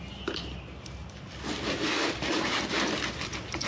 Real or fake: real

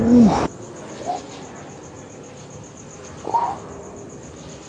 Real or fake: real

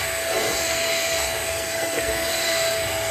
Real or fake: fake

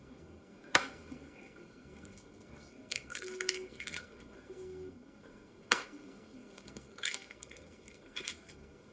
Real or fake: fake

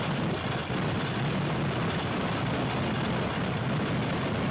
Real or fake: real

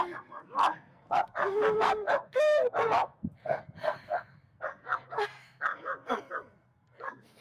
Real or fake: fake